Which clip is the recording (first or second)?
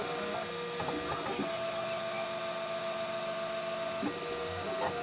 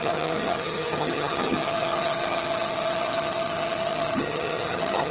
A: first